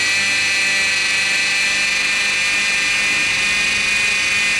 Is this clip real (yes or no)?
yes